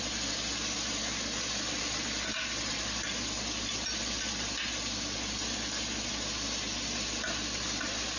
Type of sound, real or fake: real